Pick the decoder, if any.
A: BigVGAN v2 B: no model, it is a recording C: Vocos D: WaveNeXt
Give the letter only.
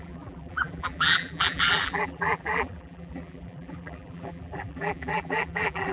A